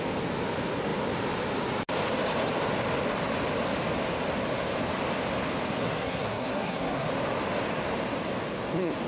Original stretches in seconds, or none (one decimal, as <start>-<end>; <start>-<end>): 0.0-5.8; 7.1-9.1